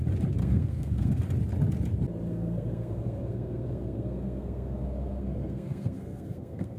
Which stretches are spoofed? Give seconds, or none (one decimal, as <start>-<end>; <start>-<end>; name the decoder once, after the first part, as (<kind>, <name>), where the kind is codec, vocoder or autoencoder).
0.4-1.2 (codec, SNAC); 2.3-6.8